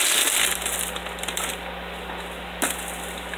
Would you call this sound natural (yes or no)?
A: yes